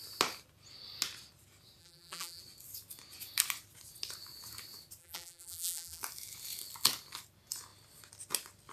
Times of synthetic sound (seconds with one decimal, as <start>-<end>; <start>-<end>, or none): 1.8-2.4; 5.0-6.0